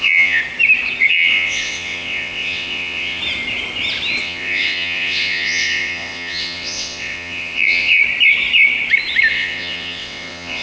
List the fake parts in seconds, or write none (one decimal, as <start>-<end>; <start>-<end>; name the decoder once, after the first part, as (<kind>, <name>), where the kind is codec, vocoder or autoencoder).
0.0-0.4 (vocoder, WaveNeXt); 1.1-3.2; 4.2-8.0; 9.3-10.6